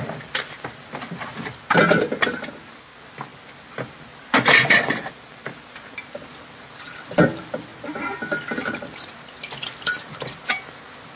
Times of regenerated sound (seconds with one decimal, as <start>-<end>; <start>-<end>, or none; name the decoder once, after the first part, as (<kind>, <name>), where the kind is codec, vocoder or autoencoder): none